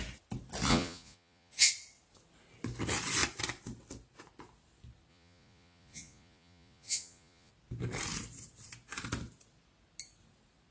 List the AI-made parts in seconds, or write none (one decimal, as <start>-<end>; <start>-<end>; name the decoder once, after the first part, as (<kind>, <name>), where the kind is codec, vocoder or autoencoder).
0.7-1.7 (vocoder, Vocos); 5.1-7.5